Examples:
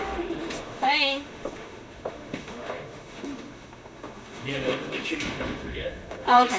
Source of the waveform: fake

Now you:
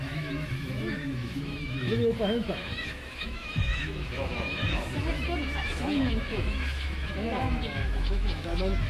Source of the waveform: fake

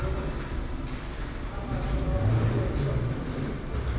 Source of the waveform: real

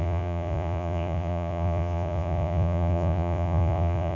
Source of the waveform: fake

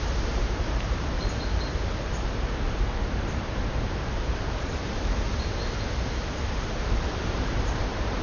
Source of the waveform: fake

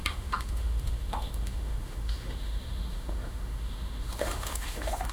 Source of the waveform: fake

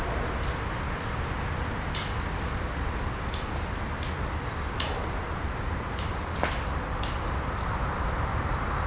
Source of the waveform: real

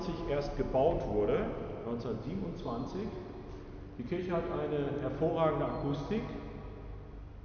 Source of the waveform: real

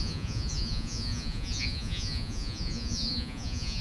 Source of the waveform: fake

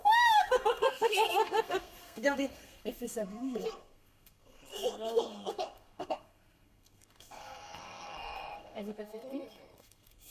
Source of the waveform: fake